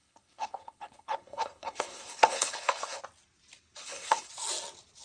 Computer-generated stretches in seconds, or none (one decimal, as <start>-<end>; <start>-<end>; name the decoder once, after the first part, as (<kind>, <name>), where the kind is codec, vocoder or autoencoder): 0.0-3.0 (codec, HILCodec); 3.8-4.3